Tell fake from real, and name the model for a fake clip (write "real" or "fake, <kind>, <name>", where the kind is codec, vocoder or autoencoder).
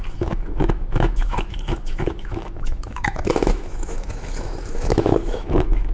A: fake, autoencoder, DAC-VAE